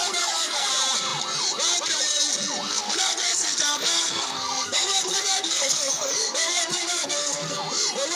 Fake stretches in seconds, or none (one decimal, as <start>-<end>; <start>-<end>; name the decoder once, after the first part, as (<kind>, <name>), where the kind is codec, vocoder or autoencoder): 0.0-0.7 (codec, SNAC); 2.7-7.6